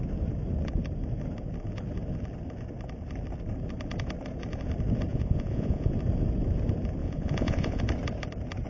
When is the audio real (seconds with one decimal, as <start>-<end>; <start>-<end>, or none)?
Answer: 0.0-5.1; 5.9-7.0; 7.8-8.7